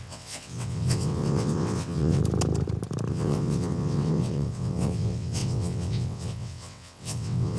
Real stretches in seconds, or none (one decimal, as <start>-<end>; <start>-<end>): 2.2-3.1